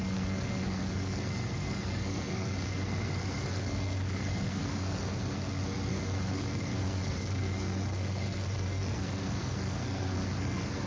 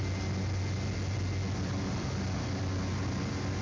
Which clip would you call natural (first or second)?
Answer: second